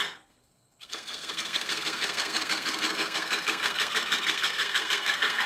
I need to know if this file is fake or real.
fake